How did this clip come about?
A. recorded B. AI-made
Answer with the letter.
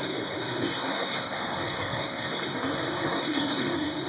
B